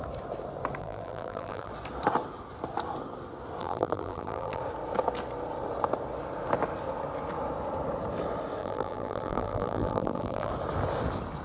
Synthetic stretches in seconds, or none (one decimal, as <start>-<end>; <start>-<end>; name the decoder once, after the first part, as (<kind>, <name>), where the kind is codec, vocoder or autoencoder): 0.8-1.7 (vocoder, BigVGAN v2); 3.6-4.6; 8.6-10.5